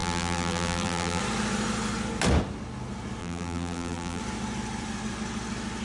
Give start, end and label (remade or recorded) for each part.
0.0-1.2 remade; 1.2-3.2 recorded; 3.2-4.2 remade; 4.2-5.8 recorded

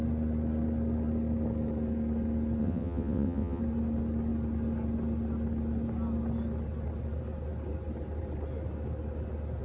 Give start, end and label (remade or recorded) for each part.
0.0-2.6 recorded; 2.6-3.6 remade; 3.6-9.6 recorded